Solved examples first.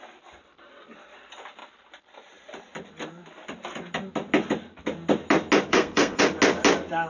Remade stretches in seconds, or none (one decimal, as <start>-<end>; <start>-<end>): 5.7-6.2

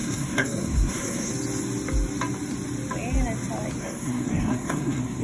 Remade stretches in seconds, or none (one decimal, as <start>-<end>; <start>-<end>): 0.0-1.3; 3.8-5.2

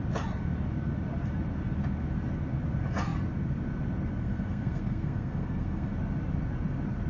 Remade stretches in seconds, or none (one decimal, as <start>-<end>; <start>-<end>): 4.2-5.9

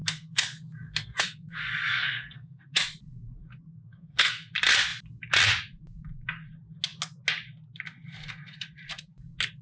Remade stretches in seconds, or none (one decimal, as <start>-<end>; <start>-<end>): 0.0-2.6; 3.7-4.5

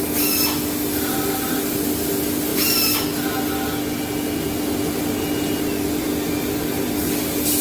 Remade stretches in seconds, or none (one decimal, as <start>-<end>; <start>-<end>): none